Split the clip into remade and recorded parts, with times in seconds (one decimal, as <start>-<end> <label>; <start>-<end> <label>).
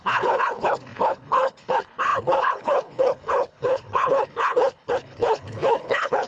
0.0-6.3 remade